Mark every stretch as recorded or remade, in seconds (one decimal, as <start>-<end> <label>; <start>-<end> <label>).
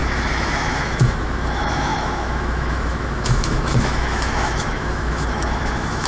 0.0-6.1 remade